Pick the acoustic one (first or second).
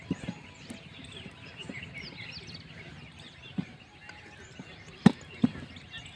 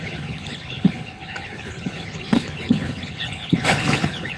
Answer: first